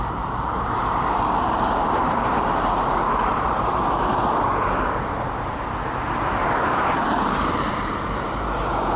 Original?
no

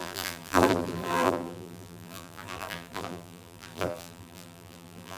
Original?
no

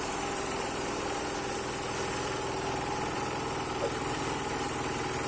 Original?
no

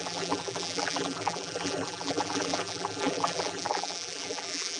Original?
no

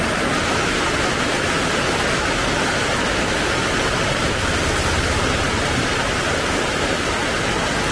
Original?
yes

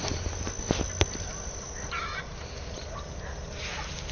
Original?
yes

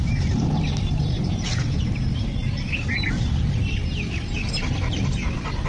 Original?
yes